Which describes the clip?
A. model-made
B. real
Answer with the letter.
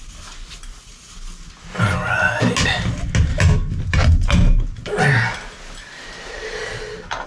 B